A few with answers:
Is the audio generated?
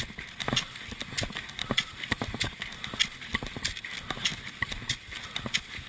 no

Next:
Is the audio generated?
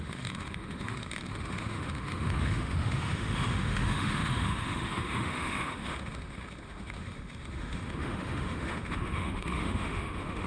yes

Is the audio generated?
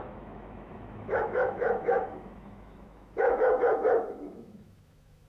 yes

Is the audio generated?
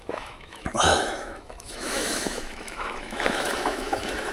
yes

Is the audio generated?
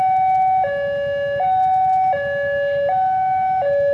no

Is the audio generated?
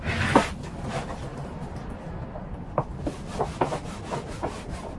no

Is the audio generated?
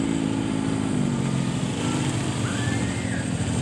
no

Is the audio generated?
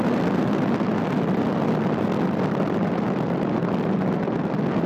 no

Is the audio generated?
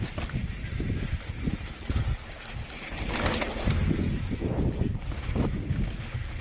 no